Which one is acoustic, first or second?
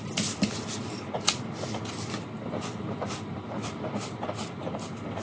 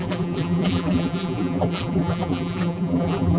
first